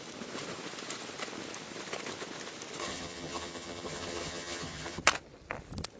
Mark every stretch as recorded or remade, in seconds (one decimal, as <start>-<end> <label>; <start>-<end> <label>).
0.0-2.8 recorded; 2.8-5.0 remade; 5.0-6.0 recorded